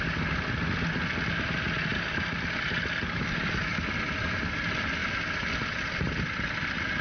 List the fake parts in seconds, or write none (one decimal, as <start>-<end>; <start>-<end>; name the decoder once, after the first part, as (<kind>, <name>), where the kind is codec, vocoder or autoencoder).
none